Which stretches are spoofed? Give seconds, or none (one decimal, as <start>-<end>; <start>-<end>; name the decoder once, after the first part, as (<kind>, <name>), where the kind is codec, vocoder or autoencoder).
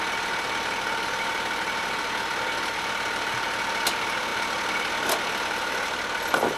none